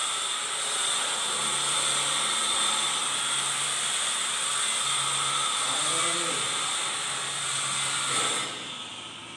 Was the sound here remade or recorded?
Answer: recorded